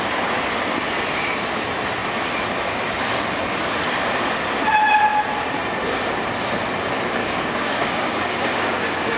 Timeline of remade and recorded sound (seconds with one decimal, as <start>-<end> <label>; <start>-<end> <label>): 0.0-7.2 recorded; 7.2-9.2 remade